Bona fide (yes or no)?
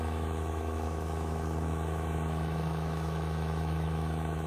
no